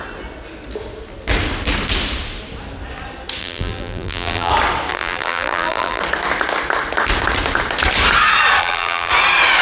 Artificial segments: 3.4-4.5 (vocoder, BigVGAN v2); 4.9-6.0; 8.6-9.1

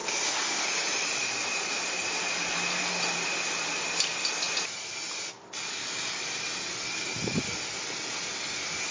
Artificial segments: none

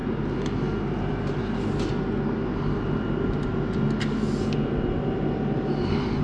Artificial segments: none

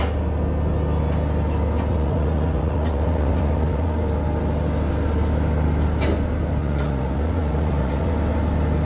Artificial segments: 1.9-4.0 (vocoder, Vocos); 6.6-8.1

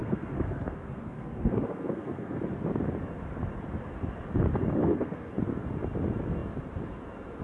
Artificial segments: 0.0-2.4 (codec, SNAC); 4.8-5.3

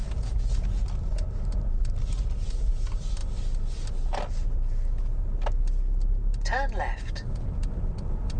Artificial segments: 0.0-0.8 (vocoder, Vocos)